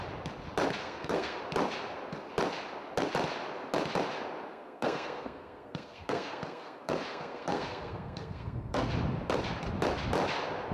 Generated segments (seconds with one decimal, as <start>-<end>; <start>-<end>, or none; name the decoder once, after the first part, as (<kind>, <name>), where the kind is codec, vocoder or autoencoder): 0.8-1.4 (codec, SNAC); 4.5-8.9